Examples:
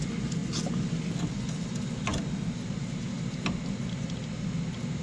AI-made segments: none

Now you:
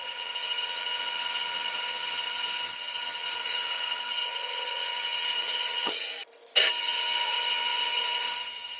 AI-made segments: 0.0-6.1; 6.8-8.8

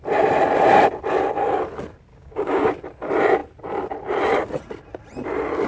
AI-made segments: 2.1-2.7

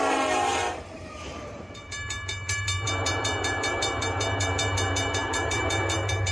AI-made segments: 0.0-6.3

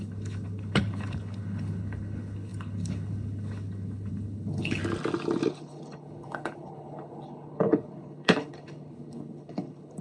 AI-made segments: 0.0-4.8; 5.5-10.0

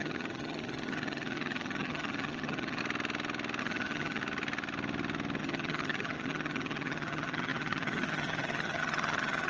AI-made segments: 0.0-2.8; 3.6-4.2; 5.4-9.5